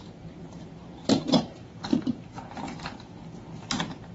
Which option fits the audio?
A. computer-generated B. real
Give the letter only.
A